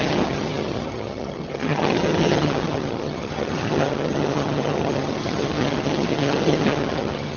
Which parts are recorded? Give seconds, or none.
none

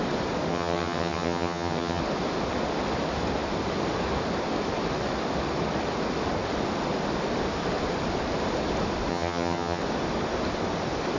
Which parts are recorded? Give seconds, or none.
0.0-0.5; 2.0-9.1; 9.8-11.2

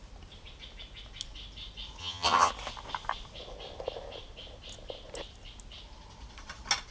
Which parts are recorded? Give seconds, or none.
0.0-2.0; 2.5-6.9

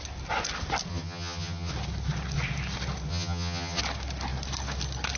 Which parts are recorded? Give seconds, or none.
0.0-0.9; 1.7-3.1; 3.8-5.2

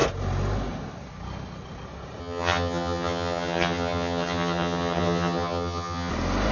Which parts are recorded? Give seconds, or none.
0.0-2.2; 6.1-6.5

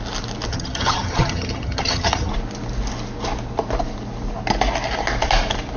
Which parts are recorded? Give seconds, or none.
0.0-0.5; 2.3-5.8

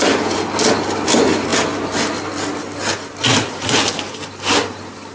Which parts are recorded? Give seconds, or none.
0.0-5.1

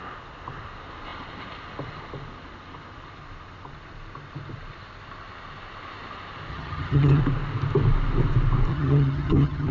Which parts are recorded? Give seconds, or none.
0.0-6.5; 7.2-8.7